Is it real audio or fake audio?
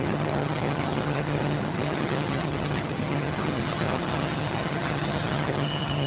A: fake